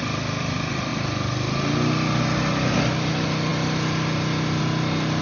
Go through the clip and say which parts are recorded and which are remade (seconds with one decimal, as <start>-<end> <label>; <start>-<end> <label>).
0.0-5.2 recorded